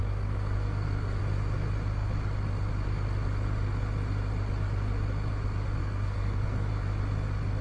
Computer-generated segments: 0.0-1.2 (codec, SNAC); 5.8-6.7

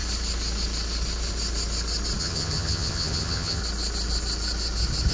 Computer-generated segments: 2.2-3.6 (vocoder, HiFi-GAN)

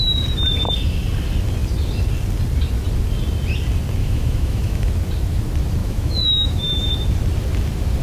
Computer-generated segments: 4.0-4.9 (autoencoder, DAC-VAE); 5.8-6.9

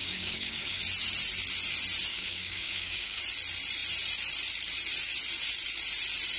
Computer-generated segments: 0.0-0.8 (codec, DAC); 2.1-3.2